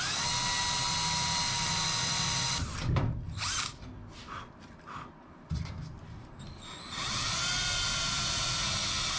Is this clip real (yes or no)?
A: yes